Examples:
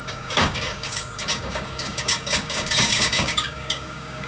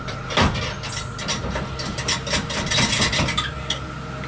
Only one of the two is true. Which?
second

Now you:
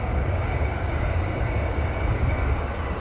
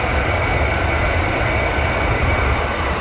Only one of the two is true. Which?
second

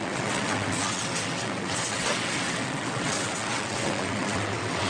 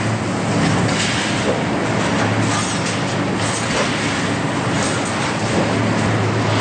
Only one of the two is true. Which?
second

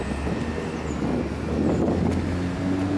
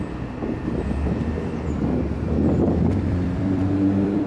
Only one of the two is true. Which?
first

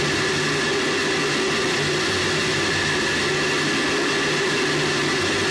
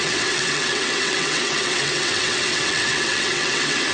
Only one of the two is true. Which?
first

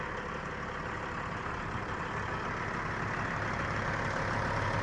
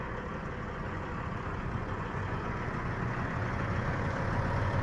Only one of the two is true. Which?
first